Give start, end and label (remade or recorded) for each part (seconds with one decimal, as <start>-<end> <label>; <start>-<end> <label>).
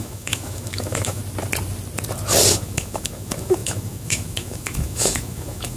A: 0.0-1.2 remade; 1.2-2.5 recorded; 2.5-5.8 remade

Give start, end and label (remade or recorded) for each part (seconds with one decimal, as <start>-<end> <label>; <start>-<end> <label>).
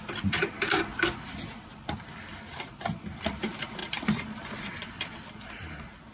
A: 0.0-6.1 remade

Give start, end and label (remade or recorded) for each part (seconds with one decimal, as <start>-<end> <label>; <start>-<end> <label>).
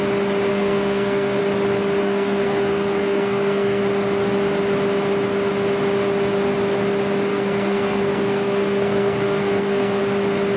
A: 0.0-0.5 recorded; 0.5-1.4 remade; 1.4-2.0 recorded; 2.0-3.8 remade; 3.8-7.3 recorded; 7.3-10.0 remade; 10.0-10.6 recorded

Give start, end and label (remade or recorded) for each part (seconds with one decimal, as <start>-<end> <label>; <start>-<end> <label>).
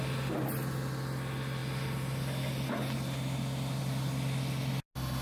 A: 0.0-5.2 recorded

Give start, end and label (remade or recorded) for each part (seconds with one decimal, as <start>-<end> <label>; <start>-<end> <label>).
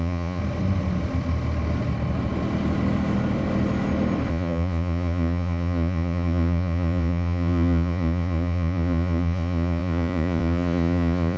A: 0.0-0.4 remade; 0.4-4.3 recorded; 4.3-11.4 remade